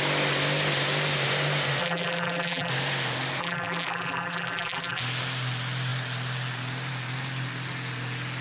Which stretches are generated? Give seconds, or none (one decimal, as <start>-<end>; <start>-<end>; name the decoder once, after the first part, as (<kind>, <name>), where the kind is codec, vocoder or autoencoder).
1.8-2.7 (vocoder, BigVGAN v2); 3.4-5.0